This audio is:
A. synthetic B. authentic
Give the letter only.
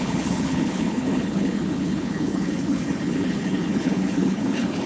A